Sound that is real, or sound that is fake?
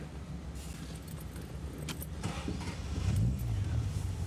real